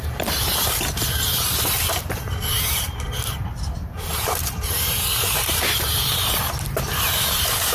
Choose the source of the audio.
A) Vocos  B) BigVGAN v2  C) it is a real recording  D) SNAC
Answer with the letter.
B